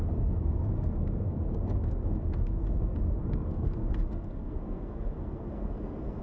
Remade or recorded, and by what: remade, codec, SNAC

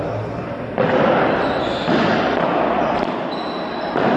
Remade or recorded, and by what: recorded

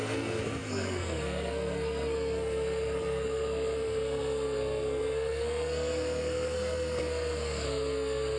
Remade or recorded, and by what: remade, codec, SNAC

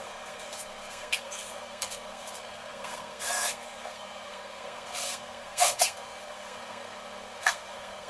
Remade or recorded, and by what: remade, codec, SNAC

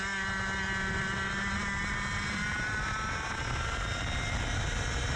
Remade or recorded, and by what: recorded